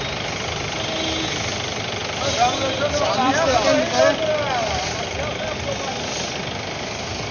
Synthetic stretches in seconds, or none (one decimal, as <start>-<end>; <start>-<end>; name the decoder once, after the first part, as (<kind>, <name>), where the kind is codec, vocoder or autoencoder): none